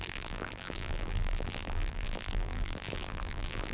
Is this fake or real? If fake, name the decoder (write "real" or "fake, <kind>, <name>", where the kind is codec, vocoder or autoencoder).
fake, vocoder, BigVGAN v2